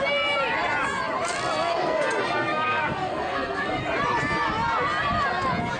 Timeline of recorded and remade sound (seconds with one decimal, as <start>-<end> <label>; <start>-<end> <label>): 0.0-1.7 recorded; 1.7-3.8 remade; 3.8-5.8 recorded

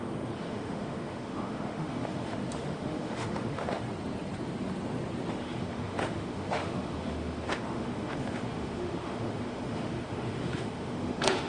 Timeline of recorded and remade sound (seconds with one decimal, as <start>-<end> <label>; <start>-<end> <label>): 0.0-3.8 remade; 3.8-5.3 recorded; 5.3-11.5 remade

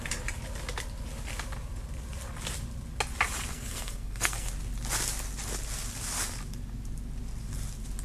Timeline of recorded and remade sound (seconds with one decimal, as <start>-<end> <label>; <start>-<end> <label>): 0.0-3.5 recorded; 3.5-4.5 remade; 4.5-8.0 recorded

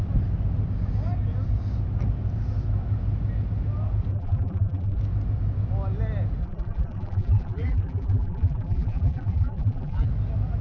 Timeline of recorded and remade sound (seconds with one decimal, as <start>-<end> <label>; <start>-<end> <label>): 0.0-4.1 recorded; 4.1-5.0 remade; 5.0-6.4 recorded; 6.4-10.1 remade; 10.1-10.6 recorded

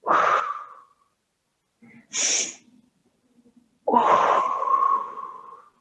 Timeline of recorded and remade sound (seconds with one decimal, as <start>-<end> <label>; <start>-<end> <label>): 0.0-5.8 recorded

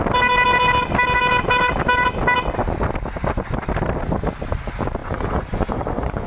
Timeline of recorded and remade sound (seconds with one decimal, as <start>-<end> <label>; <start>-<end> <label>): 0.0-5.0 recorded; 5.0-6.3 remade

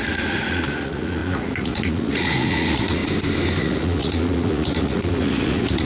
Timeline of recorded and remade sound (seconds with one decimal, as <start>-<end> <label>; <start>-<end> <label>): 0.0-3.0 remade; 3.0-3.6 recorded; 3.6-5.8 remade